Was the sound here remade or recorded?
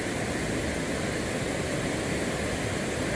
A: recorded